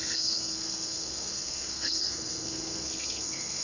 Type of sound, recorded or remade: remade